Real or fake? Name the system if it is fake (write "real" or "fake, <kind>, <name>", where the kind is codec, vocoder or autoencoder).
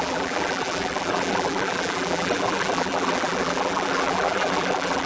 fake, vocoder, BigVGAN v2